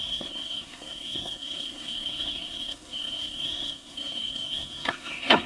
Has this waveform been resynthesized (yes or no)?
yes